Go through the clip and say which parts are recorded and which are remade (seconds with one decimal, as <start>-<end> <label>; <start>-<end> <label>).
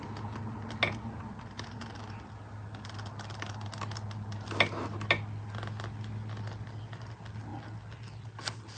0.0-8.8 recorded